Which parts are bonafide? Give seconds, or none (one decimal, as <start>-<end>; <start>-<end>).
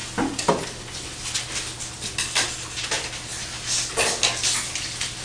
0.0-5.2